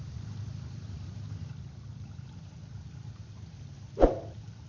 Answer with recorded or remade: recorded